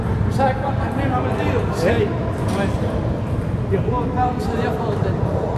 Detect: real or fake real